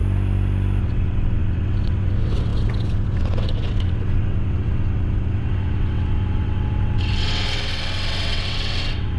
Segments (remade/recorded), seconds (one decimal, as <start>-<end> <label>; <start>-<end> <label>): 0.0-0.8 recorded; 0.8-9.2 remade